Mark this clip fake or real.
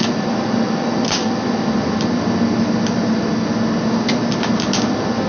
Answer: real